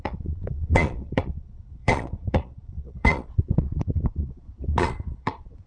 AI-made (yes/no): yes